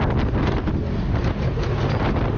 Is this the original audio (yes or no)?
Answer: yes